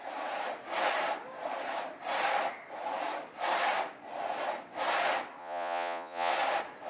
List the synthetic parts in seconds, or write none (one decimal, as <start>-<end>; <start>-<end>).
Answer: 5.4-6.3